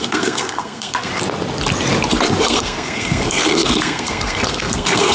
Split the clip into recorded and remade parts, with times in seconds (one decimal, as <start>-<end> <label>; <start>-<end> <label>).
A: 0.0-1.1 remade; 1.1-2.4 recorded; 2.4-5.1 remade